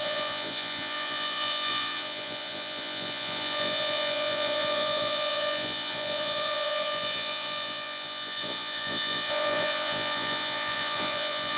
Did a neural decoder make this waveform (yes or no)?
yes